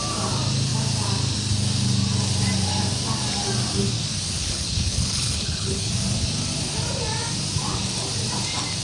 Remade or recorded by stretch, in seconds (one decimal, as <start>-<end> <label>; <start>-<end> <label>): 0.0-4.4 recorded; 4.4-5.9 remade; 5.9-8.8 recorded